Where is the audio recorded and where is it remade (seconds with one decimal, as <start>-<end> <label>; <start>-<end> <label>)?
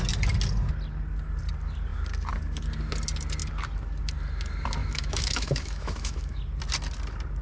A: 0.0-4.8 recorded; 4.8-6.4 remade; 6.4-7.4 recorded